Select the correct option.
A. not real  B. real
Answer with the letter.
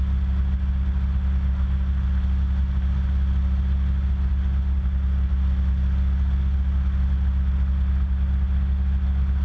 B